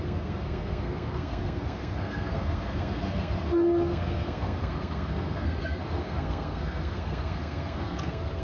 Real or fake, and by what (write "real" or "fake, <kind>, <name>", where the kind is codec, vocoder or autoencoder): fake, codec, SNAC